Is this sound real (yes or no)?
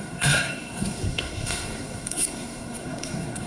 no